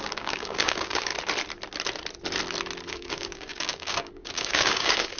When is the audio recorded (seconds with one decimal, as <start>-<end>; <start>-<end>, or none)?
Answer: 1.1-2.9